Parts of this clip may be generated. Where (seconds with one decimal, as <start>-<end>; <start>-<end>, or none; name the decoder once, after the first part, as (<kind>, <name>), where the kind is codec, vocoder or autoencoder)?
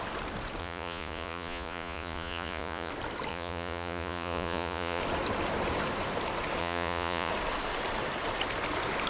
0.6-2.9 (vocoder, Vocos); 3.3-5.0; 6.6-7.3